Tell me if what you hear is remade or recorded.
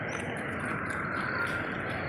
recorded